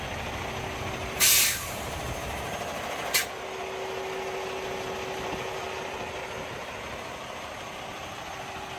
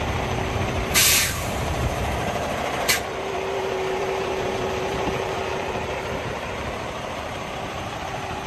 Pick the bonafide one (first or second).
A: first